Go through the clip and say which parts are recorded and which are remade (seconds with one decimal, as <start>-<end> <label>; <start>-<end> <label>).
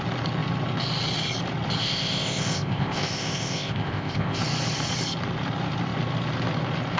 0.0-1.8 recorded; 1.8-4.4 remade; 4.4-7.0 recorded